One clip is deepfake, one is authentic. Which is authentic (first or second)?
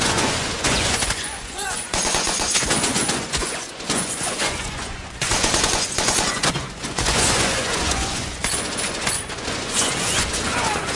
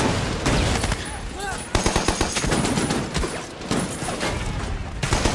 second